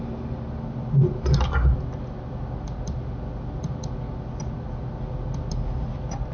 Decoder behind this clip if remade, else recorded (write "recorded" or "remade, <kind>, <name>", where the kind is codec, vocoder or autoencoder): recorded